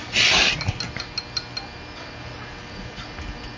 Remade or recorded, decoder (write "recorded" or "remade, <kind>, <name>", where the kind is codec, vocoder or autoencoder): recorded